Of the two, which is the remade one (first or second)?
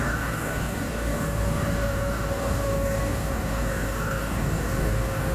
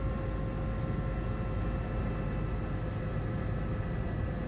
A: first